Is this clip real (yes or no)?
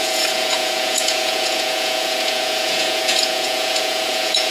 no